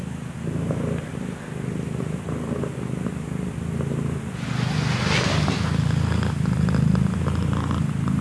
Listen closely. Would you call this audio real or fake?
real